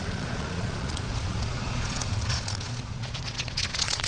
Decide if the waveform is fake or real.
fake